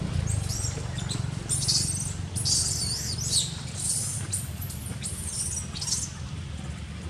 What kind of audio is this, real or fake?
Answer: real